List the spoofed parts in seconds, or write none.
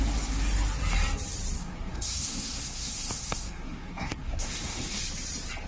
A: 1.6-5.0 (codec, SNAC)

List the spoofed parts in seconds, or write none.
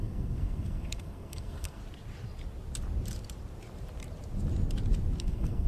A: 0.0-1.8 (codec, SNAC); 5.2-5.7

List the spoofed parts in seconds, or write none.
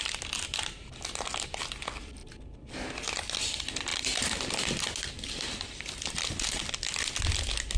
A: none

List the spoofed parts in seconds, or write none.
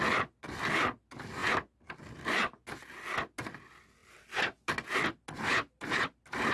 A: none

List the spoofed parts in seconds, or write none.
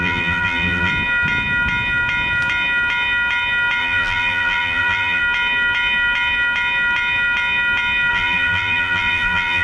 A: 0.0-0.9 (vocoder, BigVGAN v2); 3.8-5.2; 8.1-9.6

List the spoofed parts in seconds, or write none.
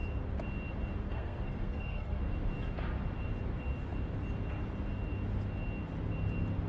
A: 1.0-2.2 (codec, SNAC)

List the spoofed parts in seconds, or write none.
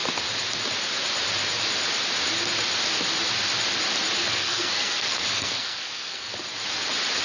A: 4.3-6.3 (codec, SNAC)